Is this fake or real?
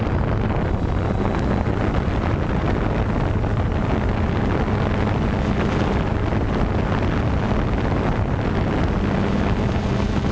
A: real